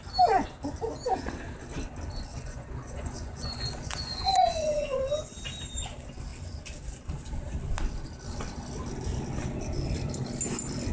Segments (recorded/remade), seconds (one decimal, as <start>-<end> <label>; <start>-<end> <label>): 0.0-2.3 recorded; 2.3-5.0 remade; 5.0-10.9 recorded